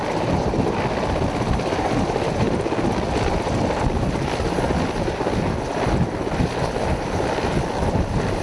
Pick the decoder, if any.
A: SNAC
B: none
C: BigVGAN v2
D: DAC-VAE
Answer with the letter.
B